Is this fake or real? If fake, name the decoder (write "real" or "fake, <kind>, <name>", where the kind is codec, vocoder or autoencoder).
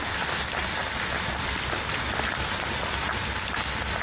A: real